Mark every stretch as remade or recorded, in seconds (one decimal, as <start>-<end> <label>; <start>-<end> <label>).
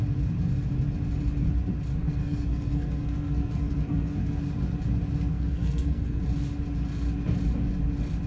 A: 0.0-2.0 recorded; 2.0-4.4 remade; 4.4-5.3 recorded; 5.3-6.2 remade; 6.2-8.3 recorded